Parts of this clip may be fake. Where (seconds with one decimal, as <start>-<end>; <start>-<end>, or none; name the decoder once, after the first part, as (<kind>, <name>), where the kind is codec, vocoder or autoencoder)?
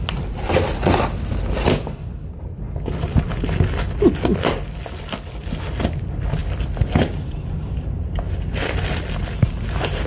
none